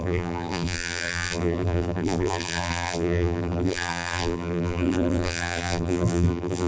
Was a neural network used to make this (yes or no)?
yes